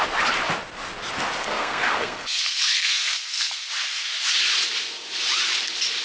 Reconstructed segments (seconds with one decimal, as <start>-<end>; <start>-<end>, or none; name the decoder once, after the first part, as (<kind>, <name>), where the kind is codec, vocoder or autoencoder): 1.4-3.7 (codec, SNAC)